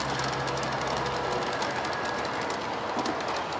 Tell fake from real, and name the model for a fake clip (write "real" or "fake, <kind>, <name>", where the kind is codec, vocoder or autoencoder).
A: real